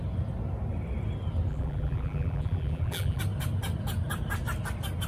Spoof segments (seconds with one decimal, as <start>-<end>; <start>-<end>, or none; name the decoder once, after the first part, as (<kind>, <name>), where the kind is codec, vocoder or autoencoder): 1.5-3.2 (vocoder, BigVGAN v2)